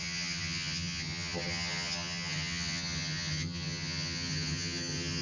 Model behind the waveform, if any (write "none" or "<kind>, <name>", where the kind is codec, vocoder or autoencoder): vocoder, HiFi-GAN